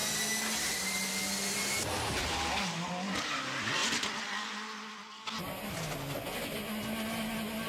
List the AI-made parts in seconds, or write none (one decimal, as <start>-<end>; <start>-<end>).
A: none